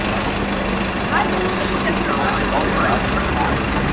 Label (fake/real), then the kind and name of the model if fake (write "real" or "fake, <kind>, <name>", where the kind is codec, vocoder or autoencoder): real